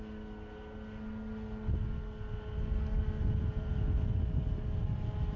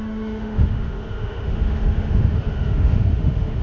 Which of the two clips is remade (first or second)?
second